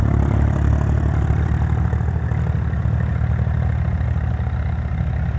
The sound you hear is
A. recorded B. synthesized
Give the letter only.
A